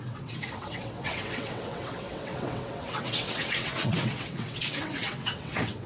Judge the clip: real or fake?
fake